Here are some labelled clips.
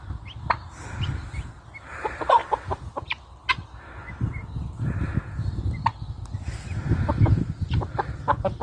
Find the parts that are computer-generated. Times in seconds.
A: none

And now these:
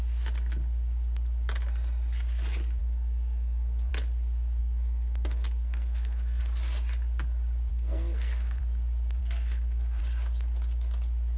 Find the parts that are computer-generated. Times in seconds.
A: 2.8-3.9 (codec, SNAC); 4.6-6.4; 7.7-8.6; 9.2-10.0

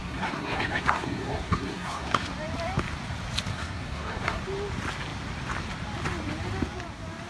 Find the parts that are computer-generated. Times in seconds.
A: 0.0-2.3 (codec, SNAC); 3.5-4.4

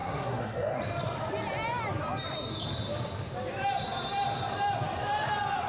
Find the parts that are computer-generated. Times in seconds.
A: 0.0-0.8 (codec, SNAC)

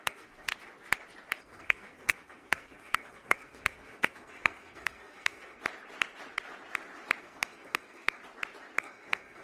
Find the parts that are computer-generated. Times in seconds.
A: 0.0-0.5 (codec, SNAC); 1.4-5.6; 7.2-8.2; 8.8-9.4

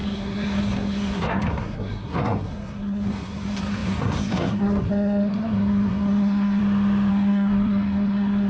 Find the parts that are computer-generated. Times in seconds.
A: 0.0-6.6 (codec, SNAC); 7.1-8.5

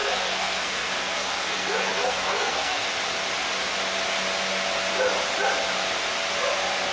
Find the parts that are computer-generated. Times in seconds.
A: 0.0-2.9 (codec, SNAC)